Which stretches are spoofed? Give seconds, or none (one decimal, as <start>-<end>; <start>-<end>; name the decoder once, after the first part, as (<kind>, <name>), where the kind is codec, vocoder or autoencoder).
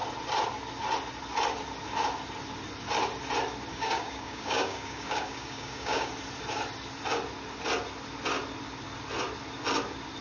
3.7-6.1 (codec, DAC)